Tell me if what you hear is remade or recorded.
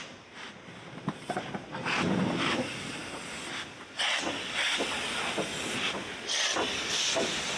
recorded